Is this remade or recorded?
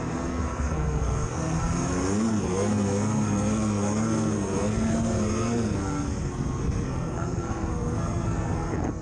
remade